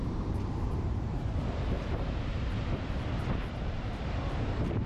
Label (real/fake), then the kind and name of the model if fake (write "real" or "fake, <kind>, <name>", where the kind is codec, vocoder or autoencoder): fake, vocoder, BigVGAN v2